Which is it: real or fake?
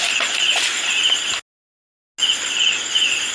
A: real